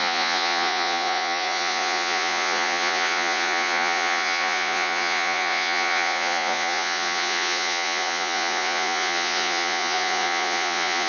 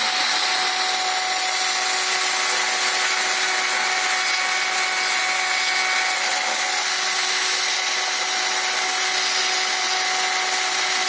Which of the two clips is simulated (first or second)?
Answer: first